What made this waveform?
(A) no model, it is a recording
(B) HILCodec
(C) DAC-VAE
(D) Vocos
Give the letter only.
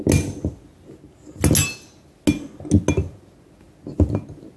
A